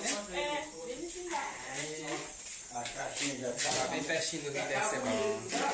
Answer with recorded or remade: recorded